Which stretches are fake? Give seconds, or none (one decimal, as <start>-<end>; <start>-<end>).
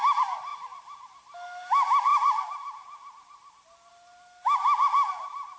none